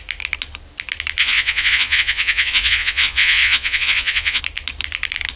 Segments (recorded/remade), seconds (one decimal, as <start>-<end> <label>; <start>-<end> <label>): 0.0-1.2 recorded; 1.2-4.4 remade; 4.4-5.4 recorded